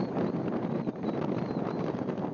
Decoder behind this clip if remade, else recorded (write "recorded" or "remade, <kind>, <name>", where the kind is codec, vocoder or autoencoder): remade, vocoder, BigVGAN v2